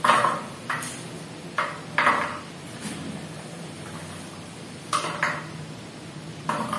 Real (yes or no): yes